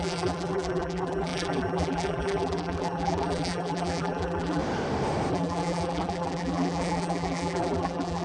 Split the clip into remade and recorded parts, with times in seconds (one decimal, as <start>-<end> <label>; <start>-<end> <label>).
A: 0.0-4.6 remade; 4.6-5.3 recorded; 5.3-8.2 remade